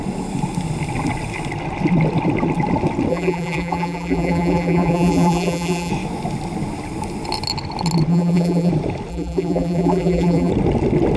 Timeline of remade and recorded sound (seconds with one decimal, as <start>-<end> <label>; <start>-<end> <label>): 0.0-3.1 recorded; 3.1-5.9 remade; 5.9-8.1 recorded; 8.1-8.7 remade; 8.7-9.1 recorded; 9.1-10.5 remade; 10.5-11.2 recorded